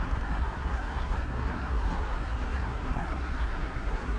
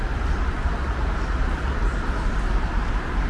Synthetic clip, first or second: first